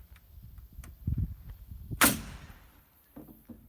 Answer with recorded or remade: recorded